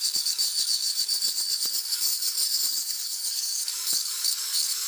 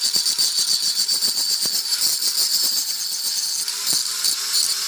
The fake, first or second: first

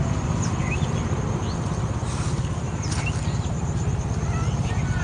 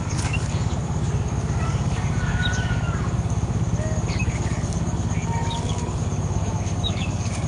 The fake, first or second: second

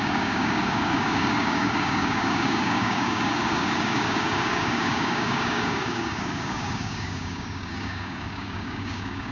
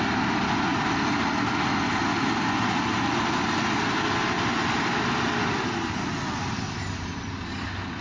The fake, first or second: first